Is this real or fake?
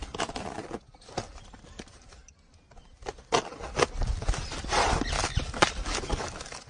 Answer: real